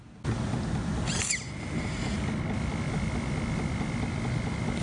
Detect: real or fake real